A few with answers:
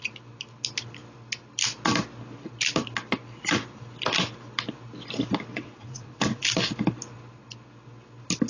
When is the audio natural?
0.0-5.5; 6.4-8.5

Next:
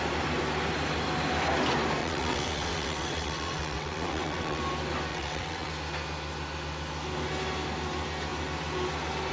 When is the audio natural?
0.0-2.0; 4.6-5.1; 5.7-9.3

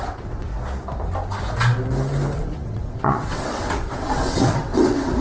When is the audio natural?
0.5-2.4